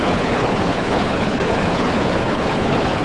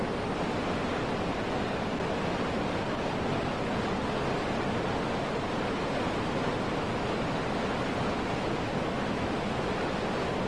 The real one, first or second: second